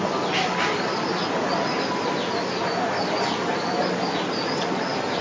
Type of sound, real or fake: real